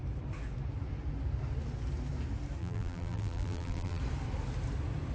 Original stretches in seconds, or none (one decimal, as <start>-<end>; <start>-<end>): 0.0-2.6; 4.0-5.1